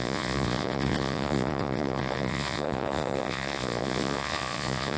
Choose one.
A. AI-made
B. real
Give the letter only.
A